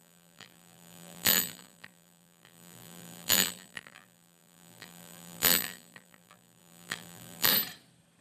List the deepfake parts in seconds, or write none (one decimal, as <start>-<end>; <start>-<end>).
0.0-7.5